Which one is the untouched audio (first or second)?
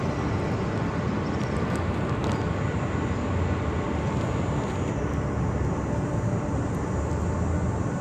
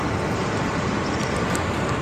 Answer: first